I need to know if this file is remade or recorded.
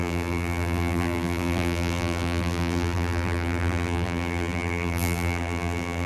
remade